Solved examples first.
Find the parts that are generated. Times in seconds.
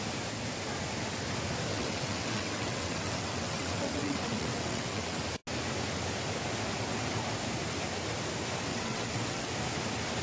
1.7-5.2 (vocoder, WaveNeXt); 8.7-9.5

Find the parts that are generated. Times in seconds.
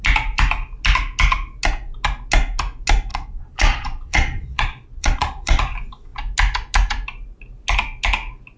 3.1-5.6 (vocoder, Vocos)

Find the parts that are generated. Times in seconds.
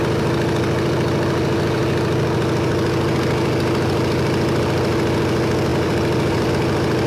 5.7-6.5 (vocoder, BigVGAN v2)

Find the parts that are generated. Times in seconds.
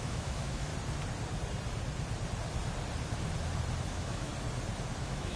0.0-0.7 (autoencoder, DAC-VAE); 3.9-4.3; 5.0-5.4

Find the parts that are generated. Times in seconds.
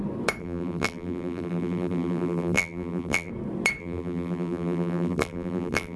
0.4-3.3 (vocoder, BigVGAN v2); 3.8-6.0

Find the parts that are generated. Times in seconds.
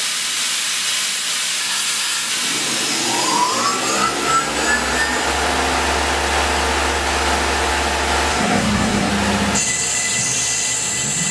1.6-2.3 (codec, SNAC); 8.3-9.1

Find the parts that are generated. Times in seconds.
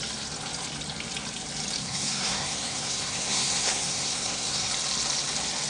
1.8-4.7 (codec, SNAC)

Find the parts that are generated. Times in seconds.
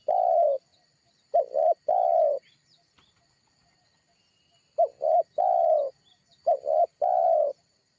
none